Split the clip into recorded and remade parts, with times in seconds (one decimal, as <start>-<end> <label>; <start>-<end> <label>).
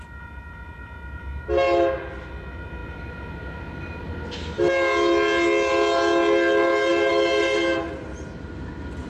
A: 0.0-9.1 recorded